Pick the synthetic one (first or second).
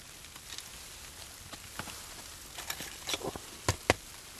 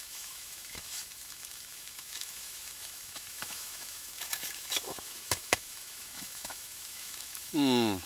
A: second